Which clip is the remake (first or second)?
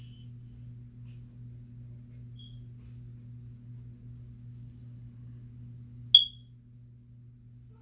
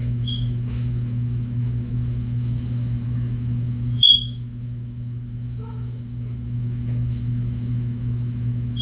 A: second